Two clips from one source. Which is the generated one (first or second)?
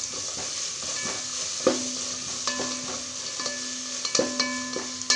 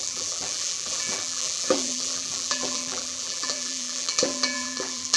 second